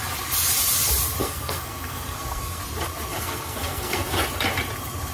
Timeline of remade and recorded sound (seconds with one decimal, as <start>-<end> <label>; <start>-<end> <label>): 0.0-1.2 recorded; 1.2-2.6 remade; 2.6-3.1 recorded; 3.1-4.2 remade; 4.2-5.1 recorded